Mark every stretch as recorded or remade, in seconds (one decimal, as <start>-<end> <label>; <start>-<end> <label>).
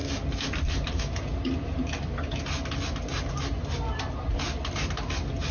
0.0-5.5 recorded